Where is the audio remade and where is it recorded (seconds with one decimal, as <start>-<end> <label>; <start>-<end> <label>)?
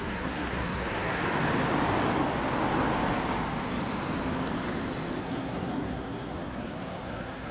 0.0-1.2 remade; 1.2-5.2 recorded; 5.2-7.5 remade